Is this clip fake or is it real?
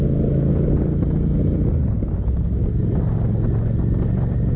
real